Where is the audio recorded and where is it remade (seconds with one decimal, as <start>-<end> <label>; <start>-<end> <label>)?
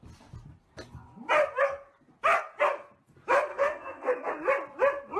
0.0-3.5 recorded; 3.5-4.3 remade; 4.3-5.2 recorded